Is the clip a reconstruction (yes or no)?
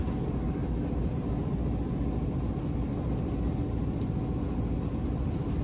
no